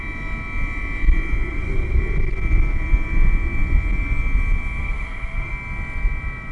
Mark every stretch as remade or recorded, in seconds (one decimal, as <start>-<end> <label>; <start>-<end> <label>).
0.0-1.5 recorded; 1.5-2.0 remade; 2.0-4.8 recorded; 4.8-5.5 remade; 5.5-6.5 recorded